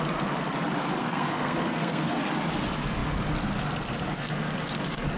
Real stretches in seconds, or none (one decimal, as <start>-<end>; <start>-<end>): 0.0-1.0; 2.1-5.2